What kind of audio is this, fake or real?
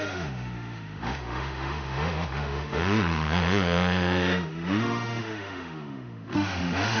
fake